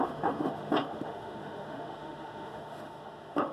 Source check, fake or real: fake